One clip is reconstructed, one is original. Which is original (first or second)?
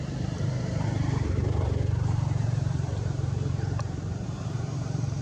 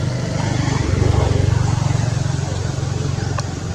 second